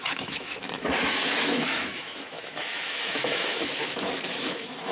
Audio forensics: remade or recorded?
remade